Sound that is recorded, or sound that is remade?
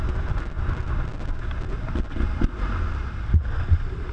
recorded